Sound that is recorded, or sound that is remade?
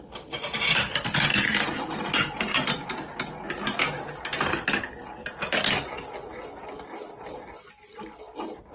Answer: recorded